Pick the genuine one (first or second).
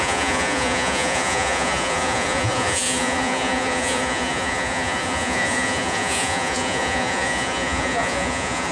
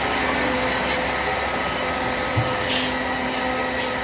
second